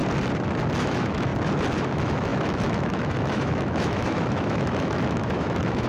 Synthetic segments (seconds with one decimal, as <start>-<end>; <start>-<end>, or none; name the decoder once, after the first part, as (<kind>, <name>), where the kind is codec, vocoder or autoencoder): 0.8-1.3 (autoencoder, DAC-VAE); 1.8-5.9

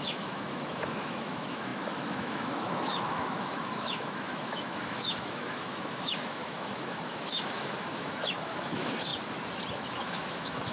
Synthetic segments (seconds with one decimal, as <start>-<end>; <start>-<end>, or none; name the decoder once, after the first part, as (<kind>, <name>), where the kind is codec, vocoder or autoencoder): 0.0-9.1 (autoencoder, DAC-VAE); 9.7-10.7

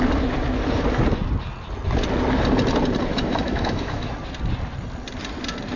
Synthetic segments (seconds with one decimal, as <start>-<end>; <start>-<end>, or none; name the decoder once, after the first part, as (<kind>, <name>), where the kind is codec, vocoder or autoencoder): 3.1-4.1 (autoencoder, DAC-VAE)

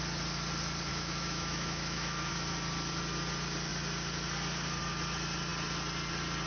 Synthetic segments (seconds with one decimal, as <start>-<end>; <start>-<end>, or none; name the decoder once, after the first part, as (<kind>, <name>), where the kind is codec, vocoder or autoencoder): 0.9-2.3 (autoencoder, DAC-VAE)

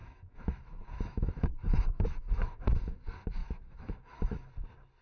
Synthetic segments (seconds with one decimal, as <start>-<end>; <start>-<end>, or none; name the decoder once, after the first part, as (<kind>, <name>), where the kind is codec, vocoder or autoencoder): 0.0-2.7 (autoencoder, DAC-VAE); 3.4-4.5

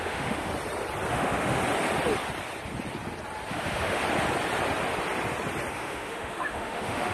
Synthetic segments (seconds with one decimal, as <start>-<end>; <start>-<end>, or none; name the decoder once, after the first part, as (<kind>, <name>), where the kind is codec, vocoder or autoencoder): 0.0-0.5 (autoencoder, DAC-VAE); 1.1-1.6; 3.5-4.0; 5.7-7.1